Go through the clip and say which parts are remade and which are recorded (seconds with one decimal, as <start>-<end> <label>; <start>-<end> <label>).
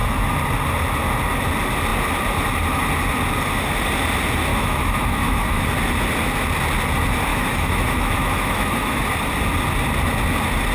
0.0-4.5 recorded; 4.5-5.6 remade; 5.6-7.3 recorded; 7.3-9.0 remade; 9.0-10.7 recorded